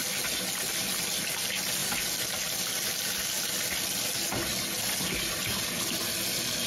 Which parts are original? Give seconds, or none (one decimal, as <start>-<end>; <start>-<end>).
0.0-6.7